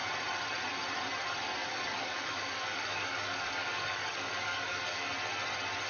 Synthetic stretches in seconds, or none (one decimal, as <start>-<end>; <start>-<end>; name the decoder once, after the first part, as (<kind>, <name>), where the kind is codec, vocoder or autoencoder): 1.6-5.1 (codec, DAC)